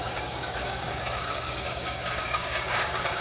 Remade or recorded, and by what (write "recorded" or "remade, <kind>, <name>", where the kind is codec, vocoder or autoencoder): remade, codec, DAC